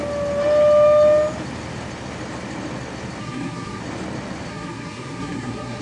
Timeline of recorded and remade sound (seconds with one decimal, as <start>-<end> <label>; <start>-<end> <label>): 0.0-3.2 recorded; 3.2-3.8 remade; 3.8-4.5 recorded; 4.5-5.8 remade